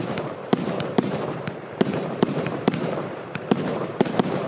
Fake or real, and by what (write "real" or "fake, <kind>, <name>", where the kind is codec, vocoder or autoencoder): fake, vocoder, BigVGAN v2